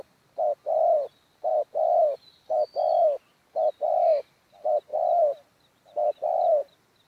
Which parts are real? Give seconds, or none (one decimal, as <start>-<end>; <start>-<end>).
0.0-4.9; 5.9-7.1